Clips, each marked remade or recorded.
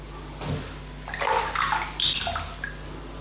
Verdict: recorded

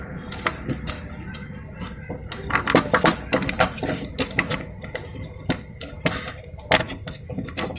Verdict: recorded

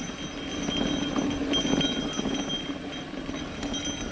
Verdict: recorded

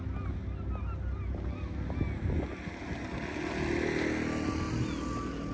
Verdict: recorded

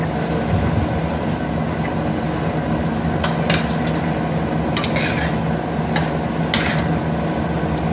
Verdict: recorded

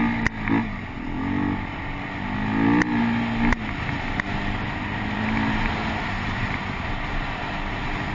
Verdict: recorded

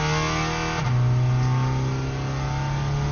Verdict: recorded